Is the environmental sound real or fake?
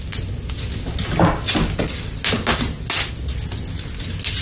real